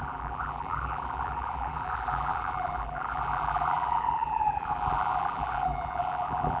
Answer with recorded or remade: remade